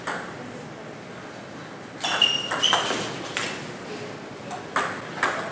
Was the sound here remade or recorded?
recorded